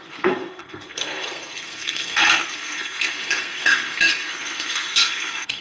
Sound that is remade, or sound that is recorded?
remade